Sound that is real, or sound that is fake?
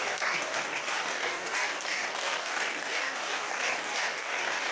fake